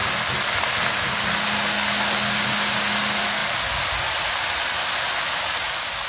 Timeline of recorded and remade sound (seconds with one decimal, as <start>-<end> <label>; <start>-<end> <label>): 0.0-6.1 recorded